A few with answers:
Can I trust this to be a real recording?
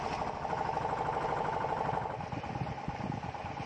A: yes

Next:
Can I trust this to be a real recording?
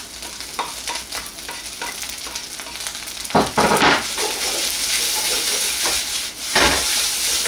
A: yes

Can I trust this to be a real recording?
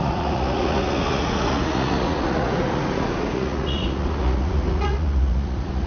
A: no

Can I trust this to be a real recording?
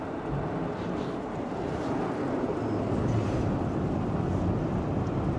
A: yes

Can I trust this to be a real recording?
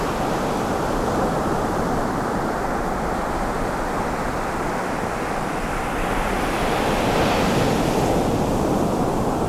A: yes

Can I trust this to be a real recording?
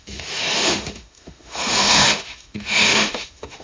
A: no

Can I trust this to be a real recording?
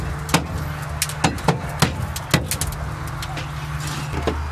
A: yes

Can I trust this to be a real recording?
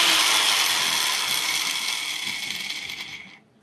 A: yes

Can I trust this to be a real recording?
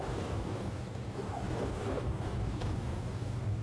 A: no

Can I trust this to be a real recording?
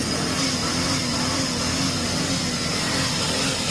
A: yes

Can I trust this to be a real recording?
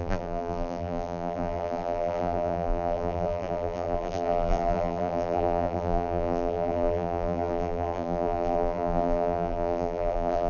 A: no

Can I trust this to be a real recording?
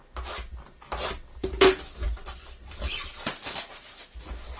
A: yes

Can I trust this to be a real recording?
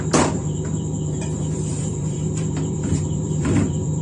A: no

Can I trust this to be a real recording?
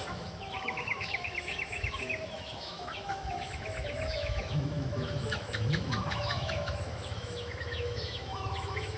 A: no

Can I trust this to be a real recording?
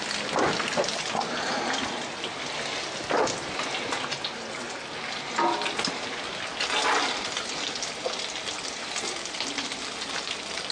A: yes